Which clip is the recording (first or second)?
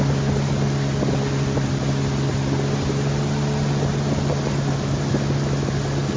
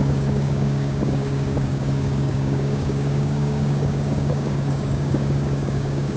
first